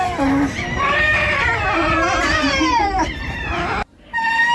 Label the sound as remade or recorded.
remade